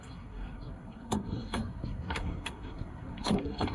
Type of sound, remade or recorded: remade